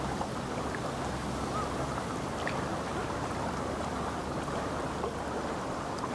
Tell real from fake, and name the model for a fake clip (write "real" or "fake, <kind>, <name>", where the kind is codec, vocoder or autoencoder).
real